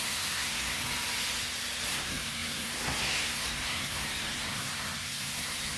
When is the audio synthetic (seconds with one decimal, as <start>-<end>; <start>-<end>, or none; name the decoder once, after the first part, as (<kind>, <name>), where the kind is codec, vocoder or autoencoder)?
0.0-0.8 (codec, SNAC); 1.9-5.8